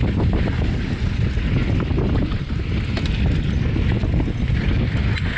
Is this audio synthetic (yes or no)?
no